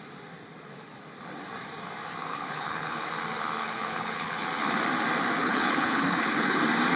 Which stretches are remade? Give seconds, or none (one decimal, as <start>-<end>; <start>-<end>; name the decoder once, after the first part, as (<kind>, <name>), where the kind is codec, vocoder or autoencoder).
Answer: 2.3-3.1 (codec, HILCodec); 3.6-4.4; 5.4-6.6